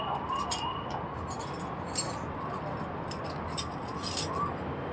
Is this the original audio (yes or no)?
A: yes